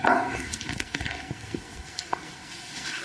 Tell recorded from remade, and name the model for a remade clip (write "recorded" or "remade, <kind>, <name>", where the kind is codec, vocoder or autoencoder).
remade, codec, SNAC